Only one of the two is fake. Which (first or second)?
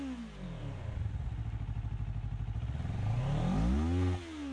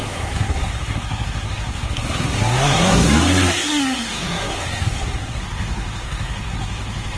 second